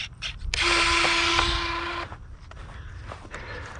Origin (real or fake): real